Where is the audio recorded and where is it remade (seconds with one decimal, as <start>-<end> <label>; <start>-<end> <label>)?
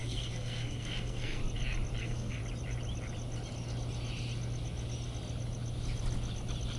0.0-1.4 remade; 1.4-2.0 recorded; 2.0-2.4 remade; 2.4-6.8 recorded